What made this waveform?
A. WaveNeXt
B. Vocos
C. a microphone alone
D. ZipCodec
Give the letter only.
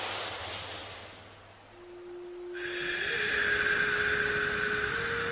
C